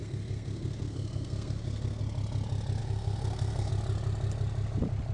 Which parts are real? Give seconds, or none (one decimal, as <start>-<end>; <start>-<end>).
2.0-2.8; 3.7-5.1